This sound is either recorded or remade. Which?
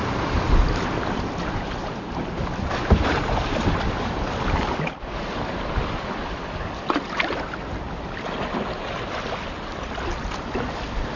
recorded